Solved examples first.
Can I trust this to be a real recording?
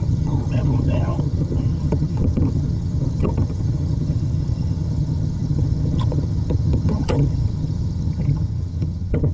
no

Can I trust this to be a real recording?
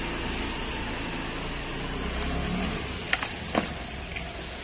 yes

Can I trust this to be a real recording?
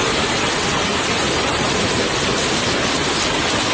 yes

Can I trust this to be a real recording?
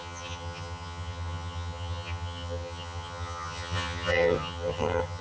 no